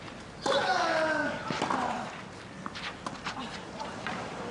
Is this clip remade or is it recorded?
recorded